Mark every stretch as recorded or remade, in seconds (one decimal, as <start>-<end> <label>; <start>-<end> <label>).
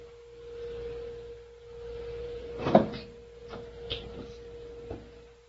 0.0-2.2 recorded; 2.2-2.8 remade; 2.8-5.5 recorded